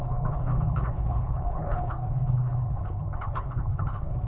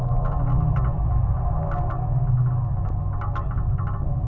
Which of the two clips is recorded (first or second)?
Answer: second